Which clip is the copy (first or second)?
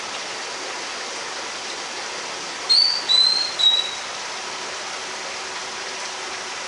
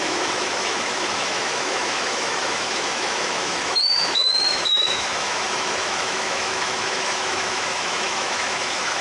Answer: second